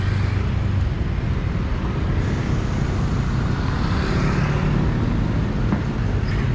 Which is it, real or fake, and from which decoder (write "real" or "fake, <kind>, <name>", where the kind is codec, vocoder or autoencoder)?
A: real